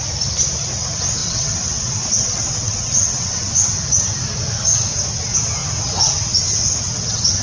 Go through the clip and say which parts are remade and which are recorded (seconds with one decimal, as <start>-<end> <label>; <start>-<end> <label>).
0.0-1.2 recorded; 1.2-3.5 remade; 3.5-7.4 recorded